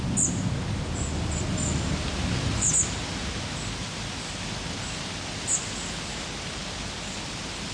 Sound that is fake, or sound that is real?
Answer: real